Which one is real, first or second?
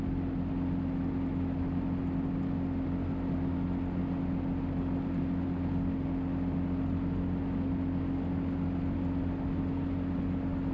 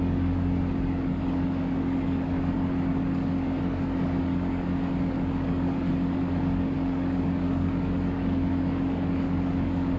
first